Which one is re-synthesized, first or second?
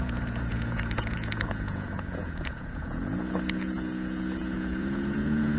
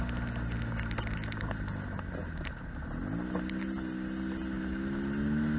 first